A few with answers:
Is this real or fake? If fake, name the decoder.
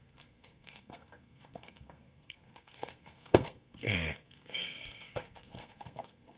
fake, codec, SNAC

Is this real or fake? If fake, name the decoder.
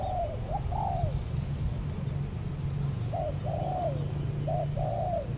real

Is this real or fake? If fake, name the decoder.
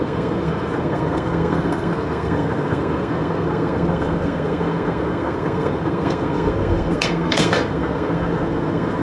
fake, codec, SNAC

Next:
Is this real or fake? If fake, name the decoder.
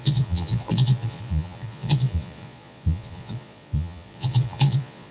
fake, vocoder, Vocos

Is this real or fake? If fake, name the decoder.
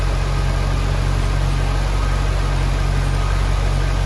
real